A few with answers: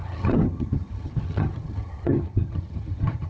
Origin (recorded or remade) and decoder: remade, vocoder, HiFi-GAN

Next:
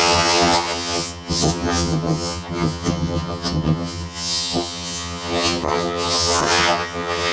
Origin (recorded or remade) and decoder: remade, vocoder, HiFi-GAN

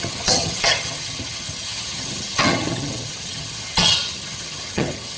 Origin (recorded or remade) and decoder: remade, vocoder, HiFi-GAN